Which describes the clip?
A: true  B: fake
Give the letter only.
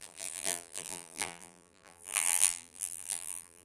B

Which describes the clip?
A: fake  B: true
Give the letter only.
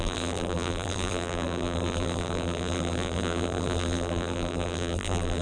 A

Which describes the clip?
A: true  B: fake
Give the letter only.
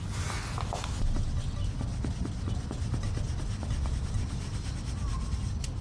A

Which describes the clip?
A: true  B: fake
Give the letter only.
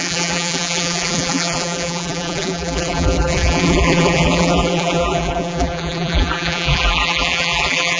B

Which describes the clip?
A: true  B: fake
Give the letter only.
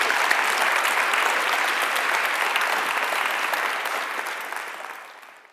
A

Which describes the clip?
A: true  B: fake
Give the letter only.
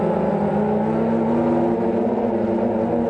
A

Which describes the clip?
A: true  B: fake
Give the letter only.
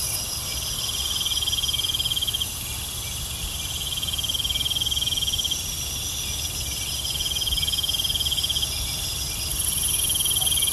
A